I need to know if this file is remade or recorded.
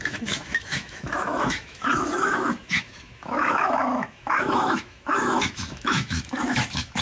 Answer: remade